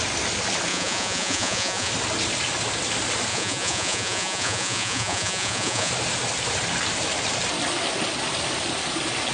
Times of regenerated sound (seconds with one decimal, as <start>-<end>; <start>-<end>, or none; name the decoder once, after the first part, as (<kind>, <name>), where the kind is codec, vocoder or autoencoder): 0.7-1.9 (vocoder, Vocos); 3.3-5.9